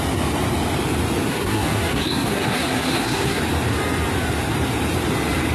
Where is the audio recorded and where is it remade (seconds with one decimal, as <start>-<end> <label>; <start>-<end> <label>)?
0.0-1.3 recorded; 1.3-3.4 remade; 3.4-5.5 recorded